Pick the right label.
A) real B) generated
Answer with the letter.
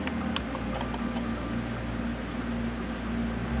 A